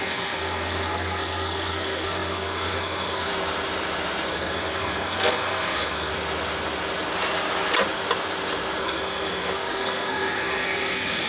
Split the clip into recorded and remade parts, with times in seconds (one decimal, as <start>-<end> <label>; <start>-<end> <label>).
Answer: 0.0-3.3 remade; 3.3-4.3 recorded; 4.3-6.1 remade; 6.1-8.8 recorded; 8.8-11.3 remade